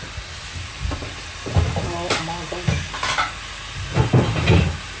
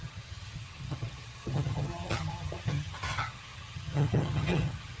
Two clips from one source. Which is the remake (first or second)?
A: second